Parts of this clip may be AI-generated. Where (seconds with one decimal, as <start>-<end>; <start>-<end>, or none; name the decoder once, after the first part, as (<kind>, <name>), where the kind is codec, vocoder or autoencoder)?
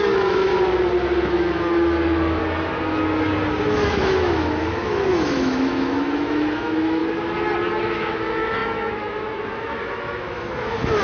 0.0-0.5 (autoencoder, DAC-VAE); 1.3-2.4; 3.5-7.0; 7.8-11.0